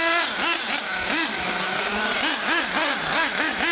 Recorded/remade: recorded